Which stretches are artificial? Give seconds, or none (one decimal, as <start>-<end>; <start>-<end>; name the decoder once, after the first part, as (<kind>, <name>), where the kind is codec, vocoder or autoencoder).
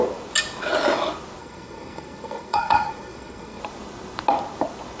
1.4-3.6 (codec, SNAC)